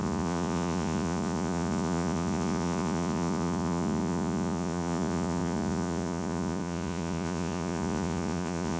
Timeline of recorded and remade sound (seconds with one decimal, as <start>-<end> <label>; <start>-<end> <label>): 0.0-8.8 remade